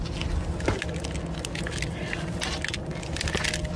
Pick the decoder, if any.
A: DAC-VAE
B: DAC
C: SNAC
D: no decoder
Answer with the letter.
D